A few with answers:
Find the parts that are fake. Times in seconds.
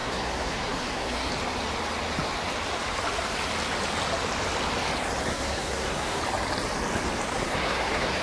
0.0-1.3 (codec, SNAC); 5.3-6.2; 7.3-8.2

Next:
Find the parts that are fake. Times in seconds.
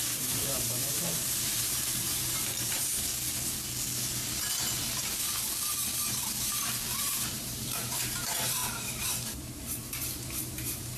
0.0-3.1 (vocoder, BigVGAN v2); 4.4-4.9; 7.0-11.0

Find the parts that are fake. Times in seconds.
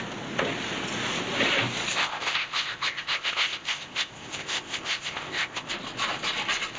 1.9-5.7 (codec, ZipCodec)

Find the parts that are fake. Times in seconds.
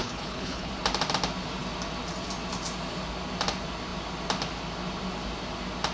0.0-0.7 (codec, HILCodec)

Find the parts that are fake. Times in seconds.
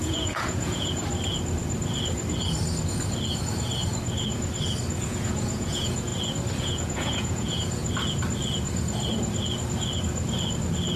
0.0-1.0 (vocoder, Vocos); 5.1-6.1; 6.6-7.8